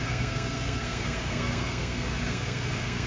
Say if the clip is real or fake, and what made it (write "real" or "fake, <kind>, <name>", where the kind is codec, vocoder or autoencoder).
fake, codec, SNAC